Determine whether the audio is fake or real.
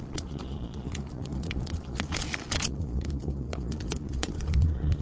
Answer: fake